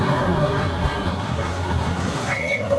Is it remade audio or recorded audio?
remade